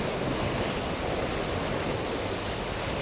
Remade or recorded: recorded